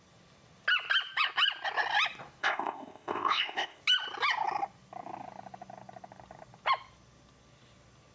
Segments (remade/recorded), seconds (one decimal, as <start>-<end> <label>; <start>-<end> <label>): 0.0-2.4 recorded; 2.4-3.8 remade; 3.8-8.1 recorded